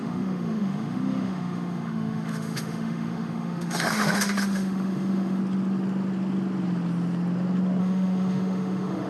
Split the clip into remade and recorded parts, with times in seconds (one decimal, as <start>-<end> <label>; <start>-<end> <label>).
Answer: 0.0-5.4 remade; 5.4-7.8 recorded; 7.8-9.1 remade